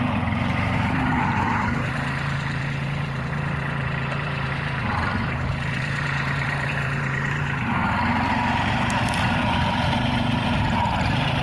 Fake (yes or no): yes